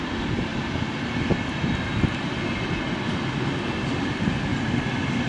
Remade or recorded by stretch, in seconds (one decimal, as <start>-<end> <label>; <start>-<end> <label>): 0.0-5.3 recorded

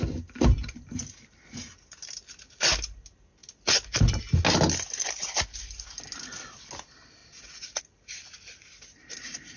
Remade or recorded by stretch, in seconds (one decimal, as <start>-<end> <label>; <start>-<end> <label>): 0.0-9.6 recorded

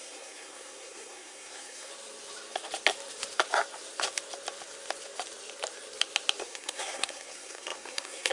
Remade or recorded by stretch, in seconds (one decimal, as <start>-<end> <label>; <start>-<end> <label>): 0.0-1.9 remade; 1.9-6.4 recorded; 6.4-8.3 remade

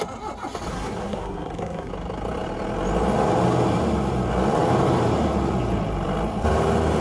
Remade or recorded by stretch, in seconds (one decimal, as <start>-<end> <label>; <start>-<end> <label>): 0.0-0.7 recorded; 0.7-1.9 remade; 1.9-7.0 recorded

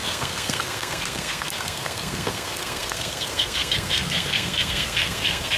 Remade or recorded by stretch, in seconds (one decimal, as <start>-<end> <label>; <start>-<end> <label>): 0.0-5.6 remade